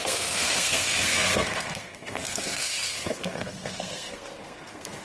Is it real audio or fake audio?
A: fake